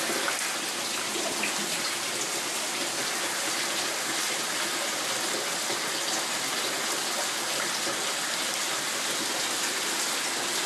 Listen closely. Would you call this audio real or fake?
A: real